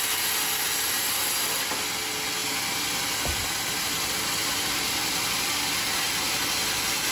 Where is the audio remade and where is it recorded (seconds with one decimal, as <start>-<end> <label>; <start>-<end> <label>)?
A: 0.0-7.1 recorded